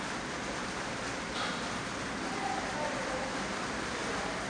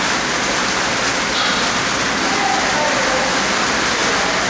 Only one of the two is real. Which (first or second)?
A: second